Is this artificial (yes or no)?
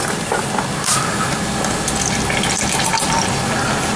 no